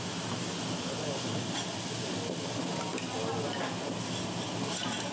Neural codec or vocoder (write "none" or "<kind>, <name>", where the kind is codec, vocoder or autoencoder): none